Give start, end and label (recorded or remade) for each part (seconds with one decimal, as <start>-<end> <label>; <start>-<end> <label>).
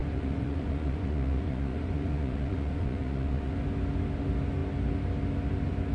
0.0-3.5 remade; 3.5-5.9 recorded